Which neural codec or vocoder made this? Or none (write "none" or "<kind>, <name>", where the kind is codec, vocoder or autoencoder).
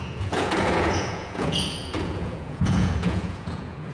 vocoder, Vocos